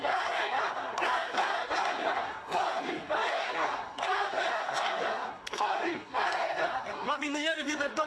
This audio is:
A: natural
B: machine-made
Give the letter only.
B